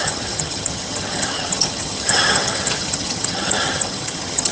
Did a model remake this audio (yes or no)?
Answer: yes